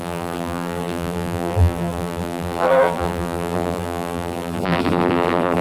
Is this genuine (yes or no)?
no